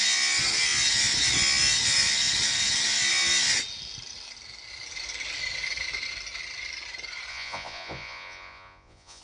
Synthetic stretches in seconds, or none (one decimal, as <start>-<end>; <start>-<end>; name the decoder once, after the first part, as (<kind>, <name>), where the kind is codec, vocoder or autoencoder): 7.3-9.2 (vocoder, Vocos)